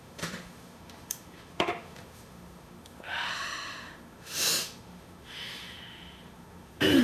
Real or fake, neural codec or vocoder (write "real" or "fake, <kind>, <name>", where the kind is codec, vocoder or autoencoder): fake, autoencoder, DAC-VAE